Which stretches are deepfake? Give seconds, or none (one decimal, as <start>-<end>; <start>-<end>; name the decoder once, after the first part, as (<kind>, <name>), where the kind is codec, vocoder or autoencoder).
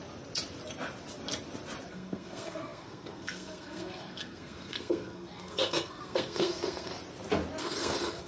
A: 1.9-6.9 (codec, SNAC); 7.6-8.3